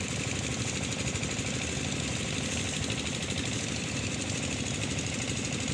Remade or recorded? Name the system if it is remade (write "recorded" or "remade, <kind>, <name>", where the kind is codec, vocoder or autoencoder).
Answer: recorded